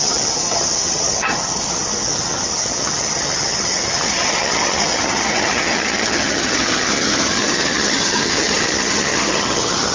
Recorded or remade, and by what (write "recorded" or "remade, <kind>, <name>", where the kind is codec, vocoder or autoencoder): remade, vocoder, HiFi-GAN